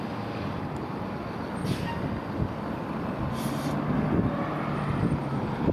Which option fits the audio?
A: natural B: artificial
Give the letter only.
A